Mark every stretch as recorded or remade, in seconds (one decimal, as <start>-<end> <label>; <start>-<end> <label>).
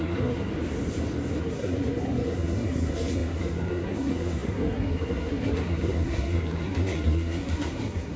0.0-0.5 remade; 0.5-1.4 recorded; 1.4-8.2 remade